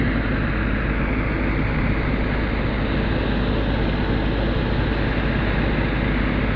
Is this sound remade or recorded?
recorded